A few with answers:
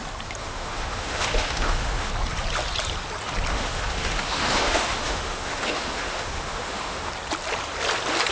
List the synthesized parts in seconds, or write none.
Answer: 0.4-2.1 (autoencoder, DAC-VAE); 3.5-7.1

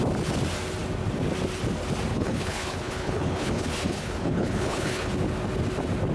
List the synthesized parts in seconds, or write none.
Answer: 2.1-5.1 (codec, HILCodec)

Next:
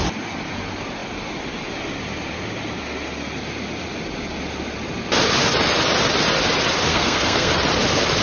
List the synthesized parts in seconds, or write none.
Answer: 6.9-7.5 (codec, SNAC)

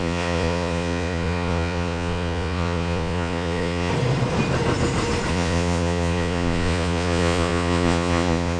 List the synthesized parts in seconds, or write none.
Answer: 0.0-3.9 (vocoder, Vocos); 5.3-8.6